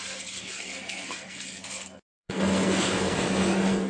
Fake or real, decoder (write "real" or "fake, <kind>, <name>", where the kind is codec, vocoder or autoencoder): fake, codec, SNAC